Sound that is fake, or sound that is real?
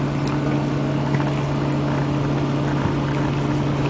real